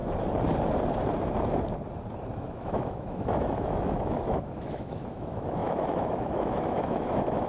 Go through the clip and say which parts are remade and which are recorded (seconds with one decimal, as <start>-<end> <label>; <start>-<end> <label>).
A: 0.0-2.4 recorded; 2.4-7.5 remade